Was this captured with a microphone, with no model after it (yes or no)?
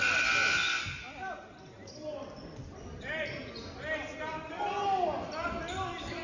yes